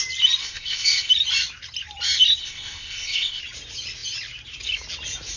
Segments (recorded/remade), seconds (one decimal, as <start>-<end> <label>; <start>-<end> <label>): 0.0-0.4 recorded; 0.4-1.1 remade; 1.1-2.4 recorded; 2.4-3.4 remade; 3.4-5.4 recorded